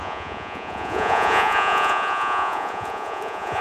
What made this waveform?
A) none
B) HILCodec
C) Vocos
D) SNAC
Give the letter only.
C